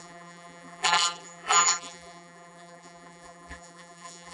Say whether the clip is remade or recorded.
remade